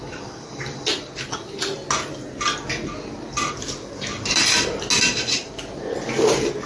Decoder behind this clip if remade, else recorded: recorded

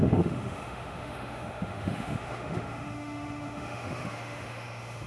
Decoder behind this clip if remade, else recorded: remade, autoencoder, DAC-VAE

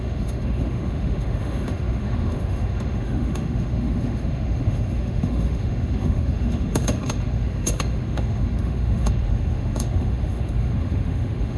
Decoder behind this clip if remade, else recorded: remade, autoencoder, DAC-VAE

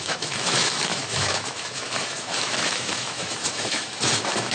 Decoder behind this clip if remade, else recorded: remade, autoencoder, DAC-VAE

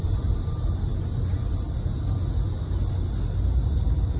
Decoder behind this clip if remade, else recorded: recorded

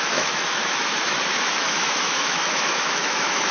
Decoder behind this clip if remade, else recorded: remade, autoencoder, DAC-VAE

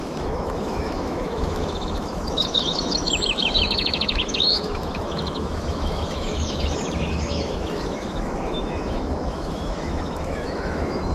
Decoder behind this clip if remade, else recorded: remade, autoencoder, DAC-VAE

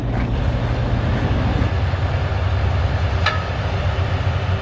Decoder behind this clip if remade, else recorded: recorded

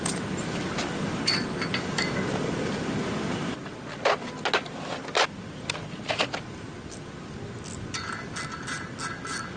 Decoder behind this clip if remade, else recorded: recorded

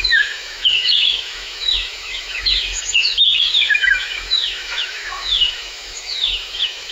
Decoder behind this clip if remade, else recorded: remade, autoencoder, DAC-VAE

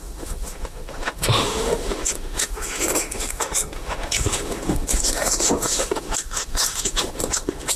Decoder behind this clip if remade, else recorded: remade, autoencoder, DAC-VAE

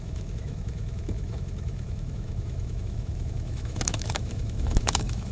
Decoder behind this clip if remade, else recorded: remade, autoencoder, DAC-VAE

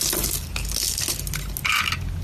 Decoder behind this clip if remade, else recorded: recorded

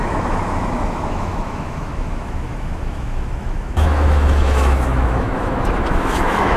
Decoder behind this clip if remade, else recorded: remade, autoencoder, DAC-VAE